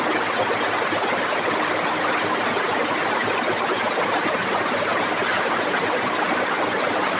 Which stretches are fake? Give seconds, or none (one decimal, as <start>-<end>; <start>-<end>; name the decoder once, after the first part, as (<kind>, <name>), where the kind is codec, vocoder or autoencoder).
none

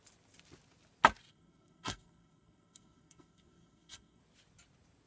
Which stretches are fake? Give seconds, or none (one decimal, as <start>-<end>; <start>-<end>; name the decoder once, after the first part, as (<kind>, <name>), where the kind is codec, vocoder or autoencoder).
1.3-4.2 (codec, SNAC)

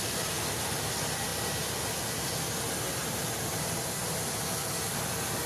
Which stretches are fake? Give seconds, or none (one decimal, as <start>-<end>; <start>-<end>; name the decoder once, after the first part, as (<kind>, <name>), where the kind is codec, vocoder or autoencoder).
3.0-3.6 (vocoder, BigVGAN v2)

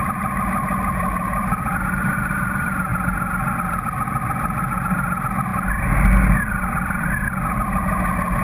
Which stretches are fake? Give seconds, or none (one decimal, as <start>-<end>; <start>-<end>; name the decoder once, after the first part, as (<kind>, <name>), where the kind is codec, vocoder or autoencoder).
none

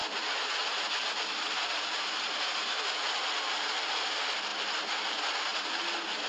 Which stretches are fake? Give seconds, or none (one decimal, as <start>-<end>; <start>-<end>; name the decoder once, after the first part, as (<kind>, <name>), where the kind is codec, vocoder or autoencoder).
none

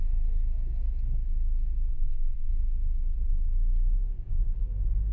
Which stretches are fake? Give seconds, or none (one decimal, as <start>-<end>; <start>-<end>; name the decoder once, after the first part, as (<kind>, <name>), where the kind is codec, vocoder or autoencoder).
1.9-2.5 (vocoder, Vocos)